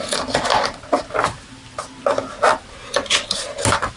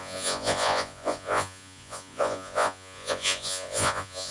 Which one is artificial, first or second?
second